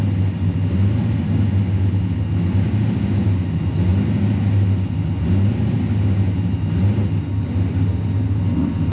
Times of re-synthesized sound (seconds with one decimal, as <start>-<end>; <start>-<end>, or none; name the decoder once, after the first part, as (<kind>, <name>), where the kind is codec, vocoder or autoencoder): none